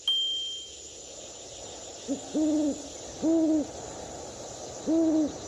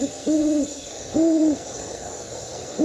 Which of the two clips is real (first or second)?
first